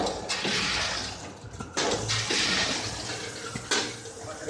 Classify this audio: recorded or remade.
recorded